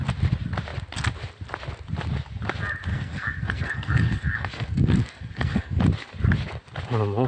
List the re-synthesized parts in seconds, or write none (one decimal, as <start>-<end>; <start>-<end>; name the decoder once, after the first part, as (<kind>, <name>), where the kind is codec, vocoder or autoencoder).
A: 2.9-5.8 (codec, SNAC)